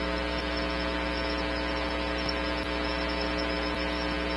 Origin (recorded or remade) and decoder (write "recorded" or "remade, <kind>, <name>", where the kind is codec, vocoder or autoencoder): recorded